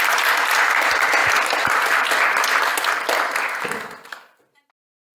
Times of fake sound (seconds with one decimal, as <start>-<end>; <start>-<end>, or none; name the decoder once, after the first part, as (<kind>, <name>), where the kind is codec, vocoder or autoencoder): 0.0-5.2 (vocoder, BigVGAN v2)